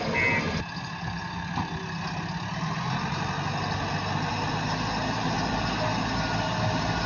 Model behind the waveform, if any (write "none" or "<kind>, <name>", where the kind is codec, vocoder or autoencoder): none